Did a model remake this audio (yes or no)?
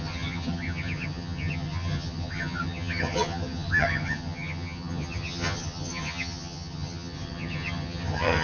yes